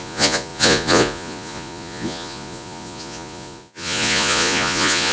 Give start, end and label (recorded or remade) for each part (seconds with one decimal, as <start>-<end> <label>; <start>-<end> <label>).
0.0-5.1 remade